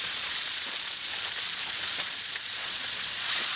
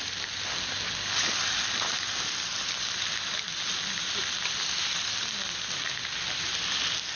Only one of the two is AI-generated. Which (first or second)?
first